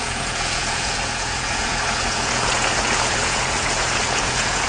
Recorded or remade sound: remade